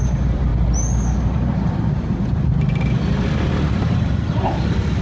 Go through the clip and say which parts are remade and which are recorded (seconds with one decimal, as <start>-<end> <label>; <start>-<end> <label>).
0.0-0.5 remade; 0.5-1.2 recorded; 1.2-3.1 remade; 3.1-3.6 recorded; 3.6-5.0 remade